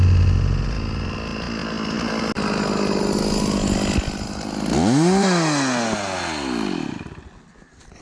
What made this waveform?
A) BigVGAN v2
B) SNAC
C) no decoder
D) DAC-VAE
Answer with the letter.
C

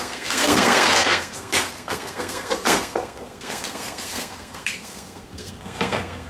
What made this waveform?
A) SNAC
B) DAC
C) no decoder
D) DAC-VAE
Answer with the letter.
A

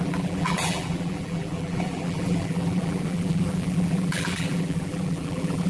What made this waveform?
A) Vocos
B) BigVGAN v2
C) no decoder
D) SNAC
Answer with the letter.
B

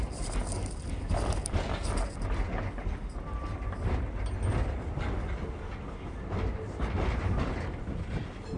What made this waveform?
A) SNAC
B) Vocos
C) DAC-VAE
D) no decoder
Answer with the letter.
D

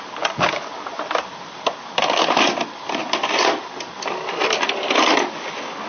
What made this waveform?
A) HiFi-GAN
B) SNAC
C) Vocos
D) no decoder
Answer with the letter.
D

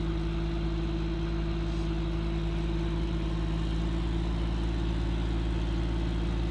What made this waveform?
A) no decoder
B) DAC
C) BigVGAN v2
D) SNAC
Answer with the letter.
A